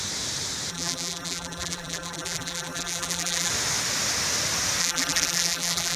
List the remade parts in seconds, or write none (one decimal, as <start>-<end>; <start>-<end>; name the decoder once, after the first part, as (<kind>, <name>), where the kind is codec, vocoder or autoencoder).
0.7-3.5 (vocoder, BigVGAN v2); 4.8-6.0